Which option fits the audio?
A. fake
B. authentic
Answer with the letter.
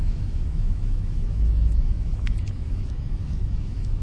A